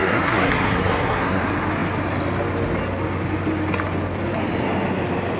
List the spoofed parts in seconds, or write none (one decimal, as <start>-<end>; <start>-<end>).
0.0-1.4

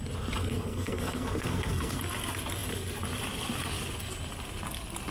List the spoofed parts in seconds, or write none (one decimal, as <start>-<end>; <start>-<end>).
0.4-2.0

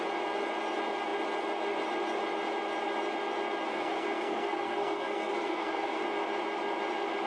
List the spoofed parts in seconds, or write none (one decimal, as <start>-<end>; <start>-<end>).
3.7-6.0

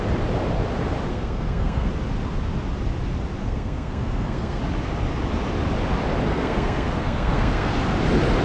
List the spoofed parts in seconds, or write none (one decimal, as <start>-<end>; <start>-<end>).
1.1-1.9; 3.4-4.6; 6.3-7.7

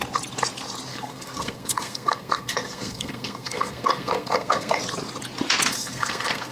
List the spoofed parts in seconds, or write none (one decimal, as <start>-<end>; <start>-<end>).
0.9-4.8; 5.7-6.5